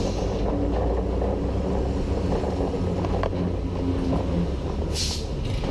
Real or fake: real